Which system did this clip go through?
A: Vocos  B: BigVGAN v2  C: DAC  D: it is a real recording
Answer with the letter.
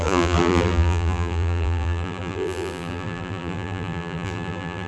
B